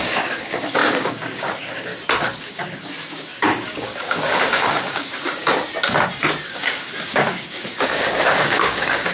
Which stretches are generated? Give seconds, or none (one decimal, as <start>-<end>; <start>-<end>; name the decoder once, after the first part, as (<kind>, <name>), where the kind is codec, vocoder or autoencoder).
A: 0.0-1.9 (codec, DAC); 2.4-5.4; 6.4-9.1

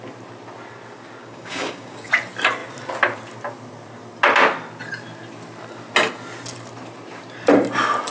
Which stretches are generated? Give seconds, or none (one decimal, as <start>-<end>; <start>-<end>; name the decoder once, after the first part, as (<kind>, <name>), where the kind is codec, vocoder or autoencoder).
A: 1.2-2.1 (codec, DAC)